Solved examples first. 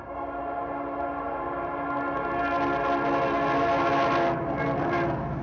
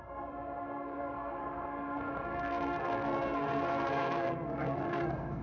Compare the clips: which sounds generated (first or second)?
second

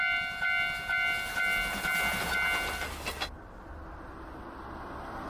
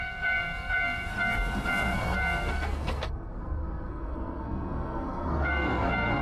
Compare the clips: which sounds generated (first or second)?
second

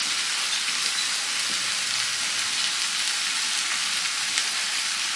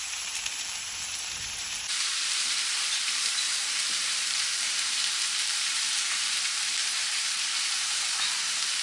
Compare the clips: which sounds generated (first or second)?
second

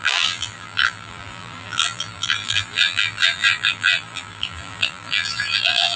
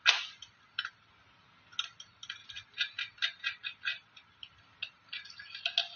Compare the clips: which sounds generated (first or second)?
first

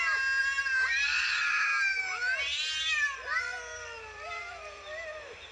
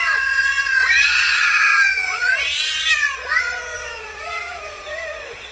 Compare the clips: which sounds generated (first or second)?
second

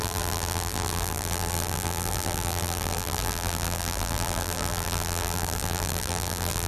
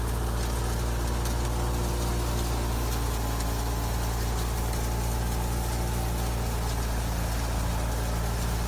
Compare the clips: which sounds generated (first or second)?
first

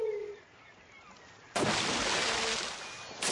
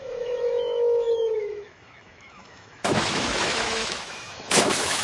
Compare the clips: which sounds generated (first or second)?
second